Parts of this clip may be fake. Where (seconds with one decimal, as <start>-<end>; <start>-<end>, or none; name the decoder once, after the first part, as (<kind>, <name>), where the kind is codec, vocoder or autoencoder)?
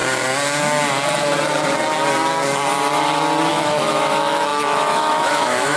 3.5-5.8 (autoencoder, DAC-VAE)